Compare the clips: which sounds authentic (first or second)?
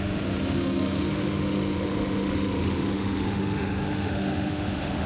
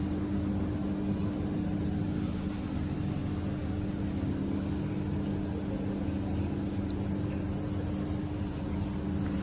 second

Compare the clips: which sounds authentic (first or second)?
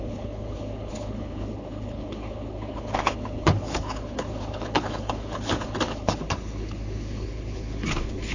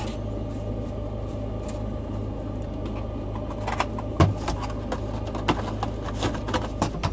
second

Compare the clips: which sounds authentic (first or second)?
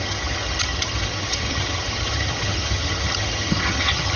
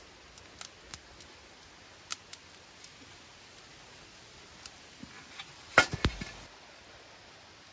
second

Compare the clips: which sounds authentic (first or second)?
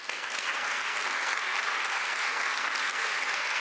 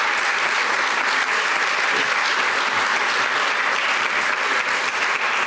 second